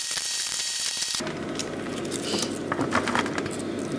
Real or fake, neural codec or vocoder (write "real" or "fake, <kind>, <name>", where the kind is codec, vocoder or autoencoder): real